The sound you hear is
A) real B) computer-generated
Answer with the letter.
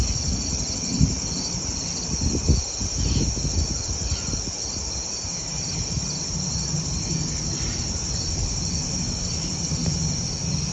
A